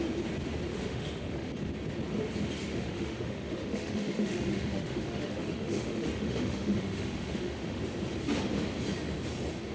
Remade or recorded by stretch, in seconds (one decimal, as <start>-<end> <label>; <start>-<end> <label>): 0.0-0.7 recorded; 0.7-1.5 remade; 1.5-2.7 recorded; 2.7-7.8 remade; 7.8-9.7 recorded